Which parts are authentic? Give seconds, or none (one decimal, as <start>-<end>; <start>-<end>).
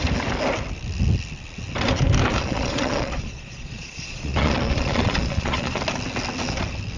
0.0-2.4; 5.8-7.0